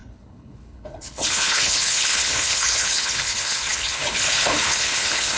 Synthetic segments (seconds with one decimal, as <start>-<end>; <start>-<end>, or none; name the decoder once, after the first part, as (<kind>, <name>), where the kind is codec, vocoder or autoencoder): 0.0-5.4 (codec, HILCodec)